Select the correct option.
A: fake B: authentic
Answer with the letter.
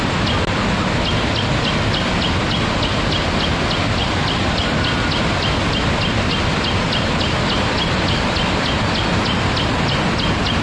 B